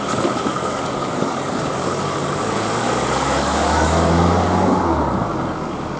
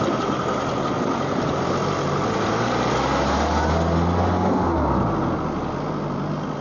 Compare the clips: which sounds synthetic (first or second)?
first